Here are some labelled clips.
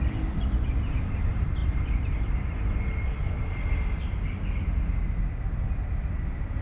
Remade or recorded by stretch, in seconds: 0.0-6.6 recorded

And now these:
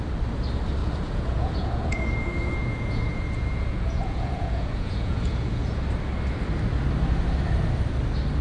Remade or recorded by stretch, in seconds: 0.0-0.8 recorded; 0.8-5.8 remade; 5.8-8.4 recorded

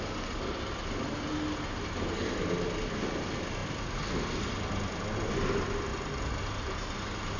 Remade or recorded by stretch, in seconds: 0.0-7.4 recorded

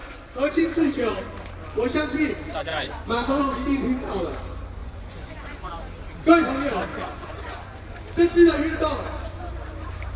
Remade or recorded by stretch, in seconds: 0.0-1.2 remade; 1.2-2.7 recorded; 2.7-3.4 remade; 3.4-4.8 recorded; 4.8-5.7 remade; 5.7-6.9 recorded; 6.9-8.0 remade; 8.0-10.2 recorded

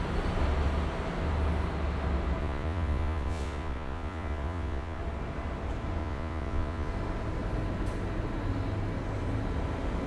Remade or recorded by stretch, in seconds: 0.0-2.4 recorded; 2.4-5.0 remade; 5.0-6.0 recorded; 6.0-6.9 remade; 6.9-10.1 recorded

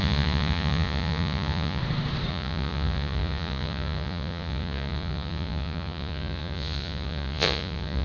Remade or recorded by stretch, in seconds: 0.0-1.8 remade; 1.8-2.3 recorded; 2.3-8.0 remade